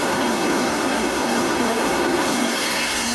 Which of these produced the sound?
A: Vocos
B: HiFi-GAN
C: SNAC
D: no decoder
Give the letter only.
C